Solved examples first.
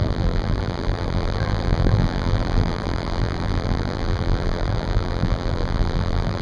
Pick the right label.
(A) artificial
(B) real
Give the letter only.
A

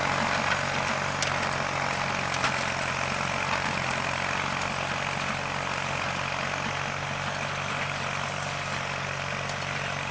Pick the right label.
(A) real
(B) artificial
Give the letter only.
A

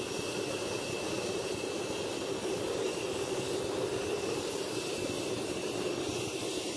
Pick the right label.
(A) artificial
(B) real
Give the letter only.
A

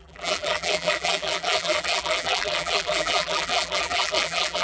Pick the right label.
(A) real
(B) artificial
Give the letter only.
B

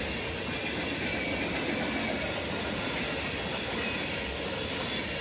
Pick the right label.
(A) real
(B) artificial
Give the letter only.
A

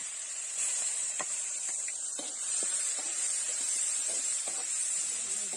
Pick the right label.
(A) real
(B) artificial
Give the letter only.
B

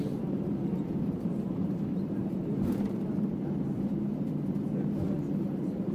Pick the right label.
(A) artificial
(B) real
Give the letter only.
A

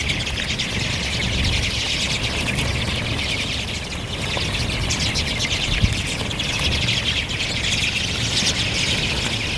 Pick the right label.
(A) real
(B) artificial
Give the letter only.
B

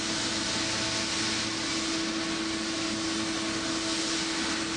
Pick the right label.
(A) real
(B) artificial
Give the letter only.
A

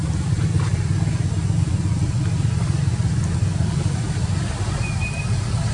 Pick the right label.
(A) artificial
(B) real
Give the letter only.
B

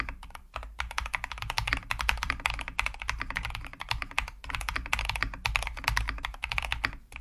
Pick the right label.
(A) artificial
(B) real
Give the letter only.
A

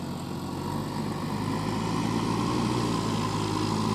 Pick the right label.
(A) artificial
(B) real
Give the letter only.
B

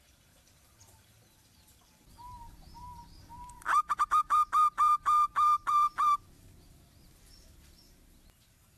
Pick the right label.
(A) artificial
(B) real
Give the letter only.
A